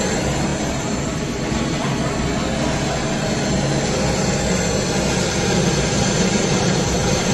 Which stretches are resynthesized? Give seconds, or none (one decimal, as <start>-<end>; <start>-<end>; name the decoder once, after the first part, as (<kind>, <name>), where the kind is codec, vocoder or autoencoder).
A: 0.0-1.8 (vocoder, BigVGAN v2); 5.7-7.3